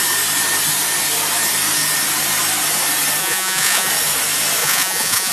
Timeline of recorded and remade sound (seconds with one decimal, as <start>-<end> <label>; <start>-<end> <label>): 0.0-3.2 recorded; 3.2-3.9 remade; 3.9-4.6 recorded; 4.6-5.3 remade